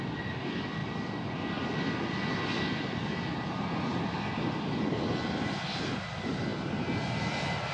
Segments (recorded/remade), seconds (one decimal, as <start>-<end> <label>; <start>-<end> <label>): 0.0-7.7 recorded